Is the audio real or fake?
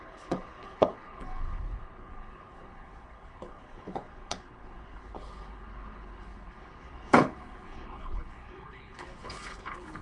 fake